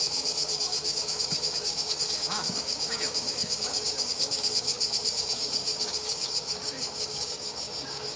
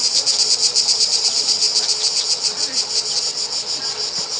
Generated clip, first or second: first